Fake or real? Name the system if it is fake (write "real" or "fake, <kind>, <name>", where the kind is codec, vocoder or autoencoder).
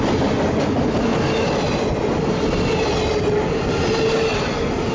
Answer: real